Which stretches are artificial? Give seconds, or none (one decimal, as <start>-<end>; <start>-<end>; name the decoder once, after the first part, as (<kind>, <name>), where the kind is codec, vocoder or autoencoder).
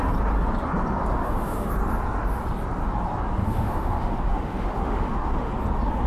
1.1-1.7 (autoencoder, DAC-VAE); 3.4-5.5